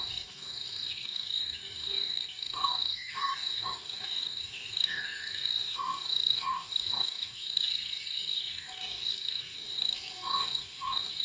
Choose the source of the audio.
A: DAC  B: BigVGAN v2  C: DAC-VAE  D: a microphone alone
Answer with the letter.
A